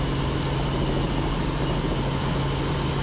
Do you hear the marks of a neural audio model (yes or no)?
no